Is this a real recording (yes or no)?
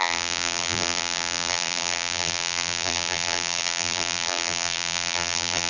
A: no